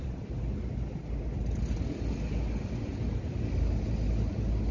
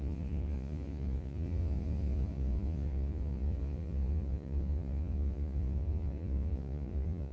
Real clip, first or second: first